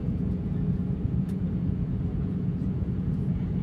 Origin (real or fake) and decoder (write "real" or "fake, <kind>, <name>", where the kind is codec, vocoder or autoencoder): fake, vocoder, Vocos